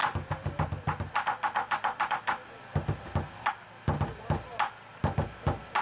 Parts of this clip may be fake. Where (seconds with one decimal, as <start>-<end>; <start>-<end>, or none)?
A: none